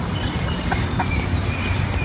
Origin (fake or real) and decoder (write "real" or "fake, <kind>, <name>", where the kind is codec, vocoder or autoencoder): real